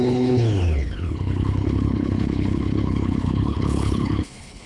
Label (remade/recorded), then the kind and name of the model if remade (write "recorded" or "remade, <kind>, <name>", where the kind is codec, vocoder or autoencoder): remade, codec, HILCodec